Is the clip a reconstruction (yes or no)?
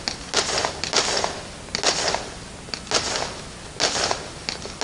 no